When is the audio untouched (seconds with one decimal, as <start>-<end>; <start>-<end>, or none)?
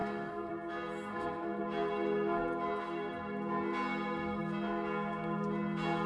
0.5-1.1; 1.6-6.1